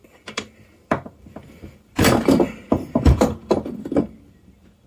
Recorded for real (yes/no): no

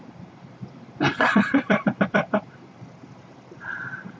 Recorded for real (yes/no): no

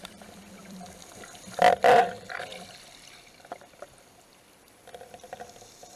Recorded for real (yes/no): no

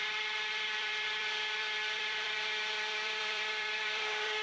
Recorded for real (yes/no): no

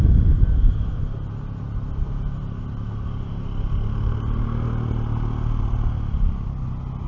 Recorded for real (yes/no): yes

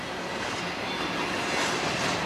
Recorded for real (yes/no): yes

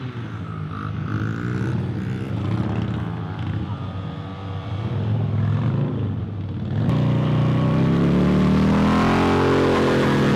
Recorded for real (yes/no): yes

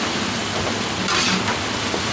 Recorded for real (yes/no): no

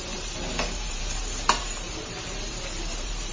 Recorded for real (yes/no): no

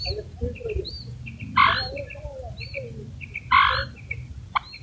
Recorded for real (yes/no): no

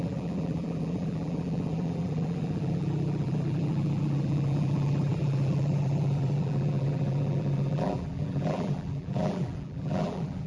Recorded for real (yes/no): no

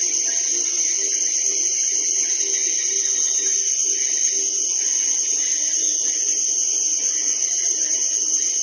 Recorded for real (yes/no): yes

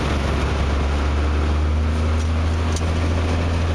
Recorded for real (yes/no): yes